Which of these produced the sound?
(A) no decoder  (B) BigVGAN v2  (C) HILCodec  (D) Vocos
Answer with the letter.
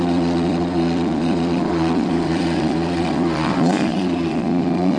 D